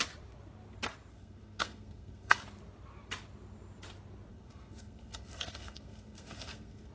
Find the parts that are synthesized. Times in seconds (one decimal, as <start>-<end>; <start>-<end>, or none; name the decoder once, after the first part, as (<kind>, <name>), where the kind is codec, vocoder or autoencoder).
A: 1.1-2.4 (codec, SNAC); 4.3-6.9